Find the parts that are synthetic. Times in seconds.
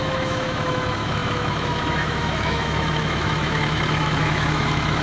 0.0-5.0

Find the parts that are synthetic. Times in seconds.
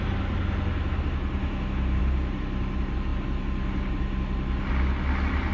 1.4-2.0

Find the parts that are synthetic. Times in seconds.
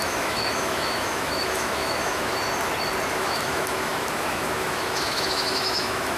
0.0-2.3; 3.1-6.2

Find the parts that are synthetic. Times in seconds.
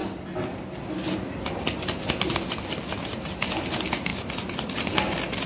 none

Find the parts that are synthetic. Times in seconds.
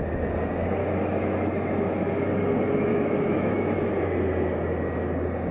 0.8-2.4; 2.9-3.9